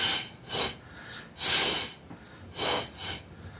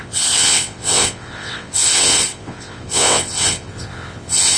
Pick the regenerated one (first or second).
second